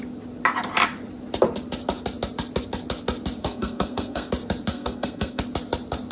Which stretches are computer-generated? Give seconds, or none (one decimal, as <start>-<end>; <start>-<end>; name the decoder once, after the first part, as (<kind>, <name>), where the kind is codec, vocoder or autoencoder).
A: 3.4-4.3 (codec, SNAC); 4.7-5.4

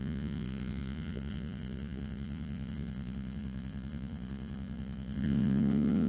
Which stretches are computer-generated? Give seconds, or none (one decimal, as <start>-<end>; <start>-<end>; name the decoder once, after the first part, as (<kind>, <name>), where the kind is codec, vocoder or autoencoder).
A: 0.0-6.1 (vocoder, Vocos)

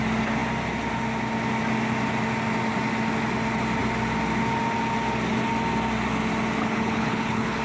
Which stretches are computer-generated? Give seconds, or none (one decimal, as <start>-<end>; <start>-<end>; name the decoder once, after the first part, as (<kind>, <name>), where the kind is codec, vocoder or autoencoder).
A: 6.6-7.6 (codec, HILCodec)

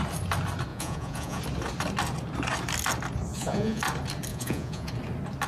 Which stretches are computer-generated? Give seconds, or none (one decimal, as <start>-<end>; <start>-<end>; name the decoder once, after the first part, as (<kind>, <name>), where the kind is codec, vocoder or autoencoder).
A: 0.7-1.4 (vocoder, Vocos); 3.3-3.8; 4.3-4.9

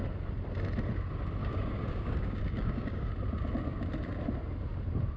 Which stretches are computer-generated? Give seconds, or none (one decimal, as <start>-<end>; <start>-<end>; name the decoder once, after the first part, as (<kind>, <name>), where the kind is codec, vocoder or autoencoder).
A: 1.4-3.1 (codec, DAC)

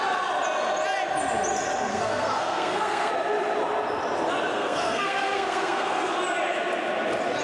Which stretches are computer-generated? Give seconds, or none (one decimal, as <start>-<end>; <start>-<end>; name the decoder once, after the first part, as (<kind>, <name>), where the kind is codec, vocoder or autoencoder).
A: 1.9-3.1 (codec, SNAC); 4.5-6.1